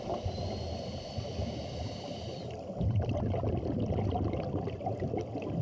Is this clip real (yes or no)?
yes